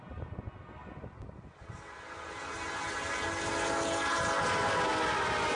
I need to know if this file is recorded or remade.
recorded